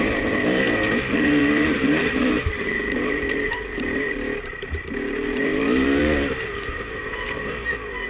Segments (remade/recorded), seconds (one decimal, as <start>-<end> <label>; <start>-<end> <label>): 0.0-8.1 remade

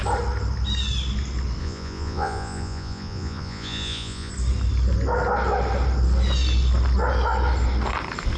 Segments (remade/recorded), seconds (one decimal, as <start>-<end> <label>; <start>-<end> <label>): 0.0-1.6 recorded; 1.6-4.3 remade; 4.3-8.4 recorded

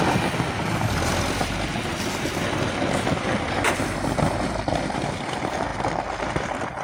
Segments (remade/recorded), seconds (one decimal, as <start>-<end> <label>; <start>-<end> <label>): 0.0-1.7 remade; 1.7-3.8 recorded; 3.8-5.7 remade; 5.7-6.2 recorded; 6.2-6.8 remade